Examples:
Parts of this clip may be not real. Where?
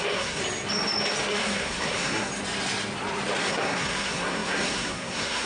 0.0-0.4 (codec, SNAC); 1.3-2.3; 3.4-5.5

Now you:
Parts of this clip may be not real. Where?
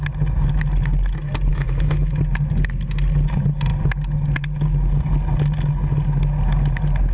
1.5-2.2 (autoencoder, DAC-VAE)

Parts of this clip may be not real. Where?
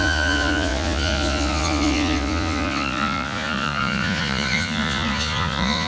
0.0-5.9 (vocoder, Vocos)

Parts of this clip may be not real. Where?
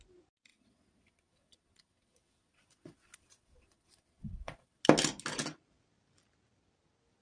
0.5-4.8 (vocoder, Vocos)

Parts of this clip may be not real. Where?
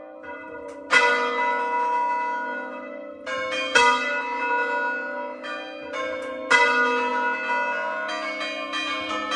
none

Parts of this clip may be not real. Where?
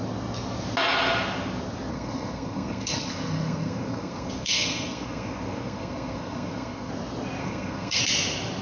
1.9-6.9 (codec, SNAC); 7.4-8.0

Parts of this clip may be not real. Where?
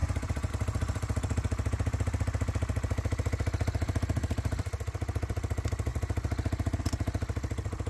0.0-0.5 (vocoder, Vocos)